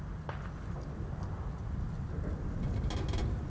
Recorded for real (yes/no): yes